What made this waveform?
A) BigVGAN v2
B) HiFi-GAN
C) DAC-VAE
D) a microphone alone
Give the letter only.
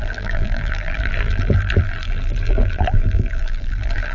A